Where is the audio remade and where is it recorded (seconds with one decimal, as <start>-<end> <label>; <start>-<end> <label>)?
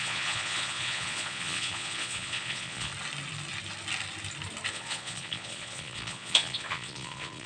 0.0-2.9 remade; 2.9-4.7 recorded; 4.7-7.5 remade